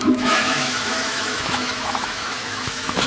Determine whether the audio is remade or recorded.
remade